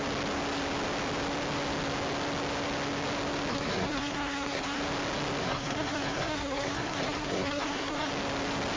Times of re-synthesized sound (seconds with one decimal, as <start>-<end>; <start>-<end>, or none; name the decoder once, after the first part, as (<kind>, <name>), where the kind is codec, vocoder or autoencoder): 3.5-4.8 (codec, SNAC); 5.4-8.1